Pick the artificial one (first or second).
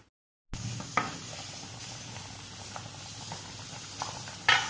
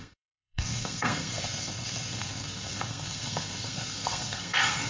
second